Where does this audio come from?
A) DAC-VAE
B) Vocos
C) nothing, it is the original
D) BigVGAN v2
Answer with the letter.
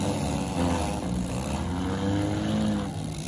C